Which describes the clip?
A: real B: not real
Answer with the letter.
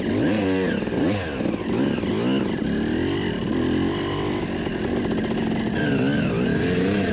A